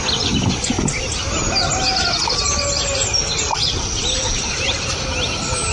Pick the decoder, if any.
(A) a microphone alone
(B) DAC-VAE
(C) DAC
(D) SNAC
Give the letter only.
A